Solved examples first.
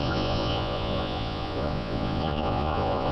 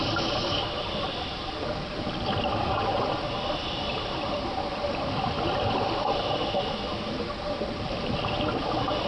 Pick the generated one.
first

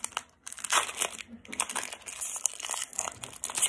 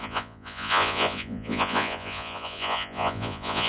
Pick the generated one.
second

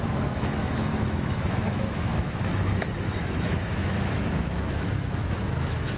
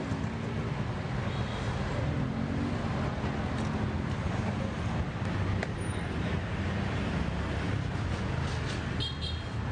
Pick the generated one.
first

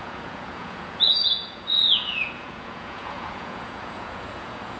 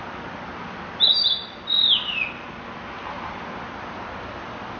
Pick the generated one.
first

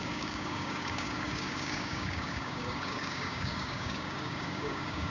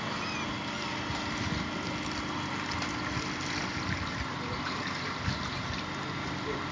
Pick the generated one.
first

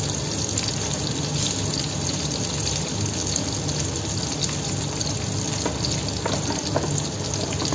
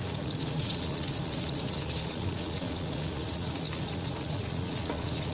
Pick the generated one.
second